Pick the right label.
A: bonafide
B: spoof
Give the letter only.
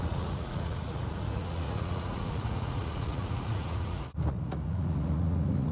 B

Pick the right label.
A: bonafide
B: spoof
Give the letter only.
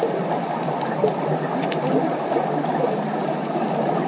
A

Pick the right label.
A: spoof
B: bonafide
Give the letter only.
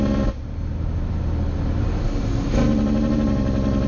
B